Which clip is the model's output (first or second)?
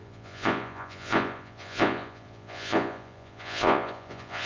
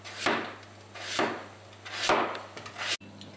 first